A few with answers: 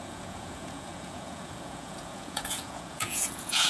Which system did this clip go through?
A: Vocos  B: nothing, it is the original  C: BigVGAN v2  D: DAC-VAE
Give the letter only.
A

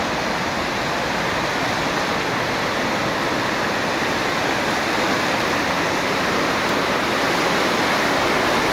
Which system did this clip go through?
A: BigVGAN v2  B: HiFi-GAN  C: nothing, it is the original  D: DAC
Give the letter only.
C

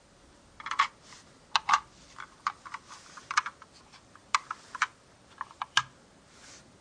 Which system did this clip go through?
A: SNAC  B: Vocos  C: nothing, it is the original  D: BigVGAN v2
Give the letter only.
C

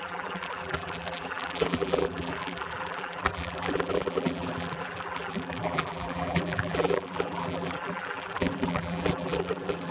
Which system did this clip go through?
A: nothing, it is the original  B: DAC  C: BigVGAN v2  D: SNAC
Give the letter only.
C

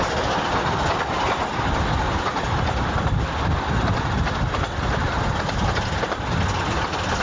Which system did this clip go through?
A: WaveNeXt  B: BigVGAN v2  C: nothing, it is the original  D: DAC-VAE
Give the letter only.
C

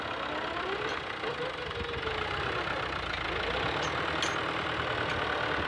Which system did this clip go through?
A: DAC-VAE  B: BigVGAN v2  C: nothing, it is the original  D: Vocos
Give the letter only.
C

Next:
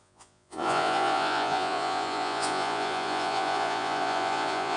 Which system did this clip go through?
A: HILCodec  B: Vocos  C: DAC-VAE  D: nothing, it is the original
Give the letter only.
B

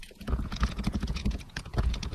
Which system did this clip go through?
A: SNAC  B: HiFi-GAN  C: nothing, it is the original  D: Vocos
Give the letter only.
D